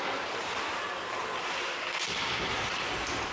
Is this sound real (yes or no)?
yes